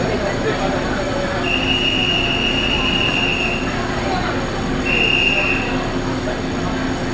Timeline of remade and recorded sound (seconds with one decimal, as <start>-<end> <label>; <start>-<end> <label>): 0.0-7.1 recorded